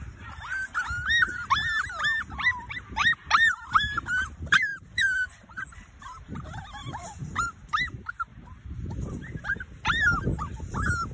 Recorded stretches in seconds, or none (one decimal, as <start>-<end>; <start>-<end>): 0.0-4.7; 6.2-8.3; 9.5-11.1